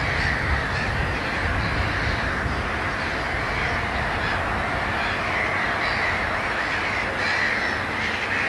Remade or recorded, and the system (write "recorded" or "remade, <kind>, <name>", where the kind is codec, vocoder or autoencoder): recorded